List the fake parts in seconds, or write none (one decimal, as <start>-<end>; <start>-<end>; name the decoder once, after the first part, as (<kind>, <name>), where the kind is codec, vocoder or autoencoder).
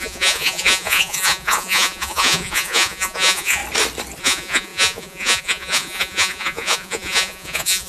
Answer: 0.0-3.6 (vocoder, Vocos); 4.2-7.9